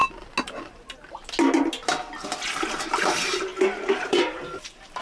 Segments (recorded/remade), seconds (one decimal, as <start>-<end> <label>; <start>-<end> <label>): 0.0-2.8 recorded; 2.8-5.0 remade